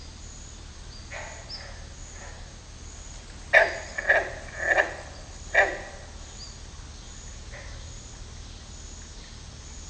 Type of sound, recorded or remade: recorded